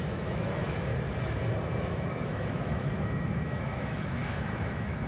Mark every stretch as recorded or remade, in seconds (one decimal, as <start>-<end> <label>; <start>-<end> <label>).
0.0-0.9 remade; 0.9-1.8 recorded; 1.8-5.1 remade